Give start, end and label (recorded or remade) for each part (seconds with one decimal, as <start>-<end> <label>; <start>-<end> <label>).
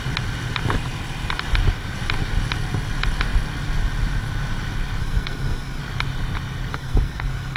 0.0-5.0 recorded; 5.0-5.8 remade; 5.8-6.7 recorded; 6.7-7.6 remade